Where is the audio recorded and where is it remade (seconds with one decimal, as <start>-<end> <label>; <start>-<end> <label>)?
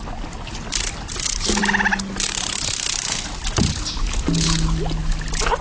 0.0-5.6 recorded